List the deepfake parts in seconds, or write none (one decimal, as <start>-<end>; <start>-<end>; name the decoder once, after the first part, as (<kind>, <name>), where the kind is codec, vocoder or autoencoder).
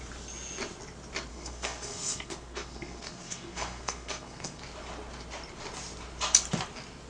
1.3-4.6 (codec, SNAC)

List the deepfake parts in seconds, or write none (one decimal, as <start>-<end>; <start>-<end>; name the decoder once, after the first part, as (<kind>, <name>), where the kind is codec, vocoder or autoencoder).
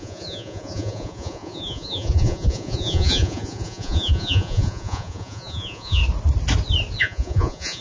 0.0-6.0 (vocoder, Vocos); 7.0-7.8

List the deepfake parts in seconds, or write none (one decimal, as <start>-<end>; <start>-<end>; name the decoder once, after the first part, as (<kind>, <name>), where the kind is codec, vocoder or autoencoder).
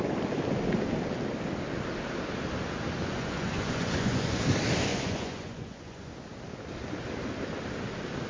3.0-4.4 (vocoder, Vocos); 4.9-6.1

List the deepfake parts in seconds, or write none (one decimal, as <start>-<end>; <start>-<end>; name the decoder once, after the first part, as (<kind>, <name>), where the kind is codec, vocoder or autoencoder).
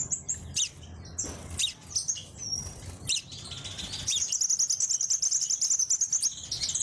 none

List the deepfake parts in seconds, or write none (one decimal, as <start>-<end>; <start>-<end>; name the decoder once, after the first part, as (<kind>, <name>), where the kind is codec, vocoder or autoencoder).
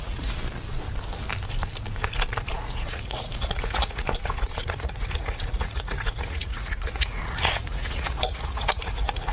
0.0-0.4 (vocoder, Vocos); 2.5-9.3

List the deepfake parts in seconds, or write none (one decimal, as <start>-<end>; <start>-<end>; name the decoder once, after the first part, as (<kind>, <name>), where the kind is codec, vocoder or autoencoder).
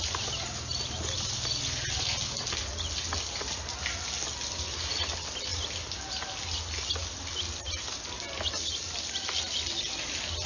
none